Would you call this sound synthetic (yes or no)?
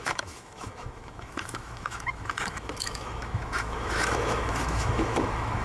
yes